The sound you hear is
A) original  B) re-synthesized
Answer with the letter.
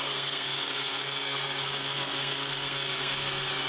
B